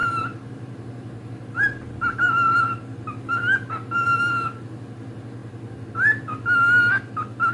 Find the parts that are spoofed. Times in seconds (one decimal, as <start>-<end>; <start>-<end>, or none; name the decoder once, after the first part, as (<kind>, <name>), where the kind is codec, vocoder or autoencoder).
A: 0.0-2.6 (vocoder, BigVGAN v2)

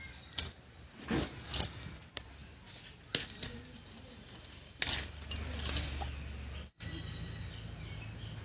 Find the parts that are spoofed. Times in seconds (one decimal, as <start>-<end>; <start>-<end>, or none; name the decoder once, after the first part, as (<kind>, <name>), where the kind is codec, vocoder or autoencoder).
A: none

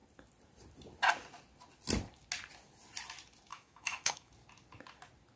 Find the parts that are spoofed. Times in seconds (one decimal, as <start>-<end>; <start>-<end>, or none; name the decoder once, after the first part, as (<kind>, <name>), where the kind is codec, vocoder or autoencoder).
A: 3.5-4.3 (autoencoder, DAC-VAE)

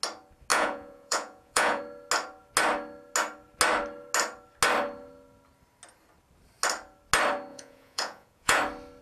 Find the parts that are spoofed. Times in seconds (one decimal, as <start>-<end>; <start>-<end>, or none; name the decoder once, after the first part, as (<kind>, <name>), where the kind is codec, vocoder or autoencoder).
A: 0.5-1.8 (vocoder, Vocos); 7.5-8.6

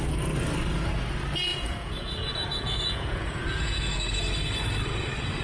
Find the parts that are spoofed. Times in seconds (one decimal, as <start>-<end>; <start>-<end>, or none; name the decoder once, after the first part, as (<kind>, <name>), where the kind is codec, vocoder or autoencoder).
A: 1.5-4.1 (vocoder, Vocos)

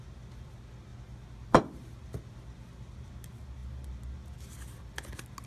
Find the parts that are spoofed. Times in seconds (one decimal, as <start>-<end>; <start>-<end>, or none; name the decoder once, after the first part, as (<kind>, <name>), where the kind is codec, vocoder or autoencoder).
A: none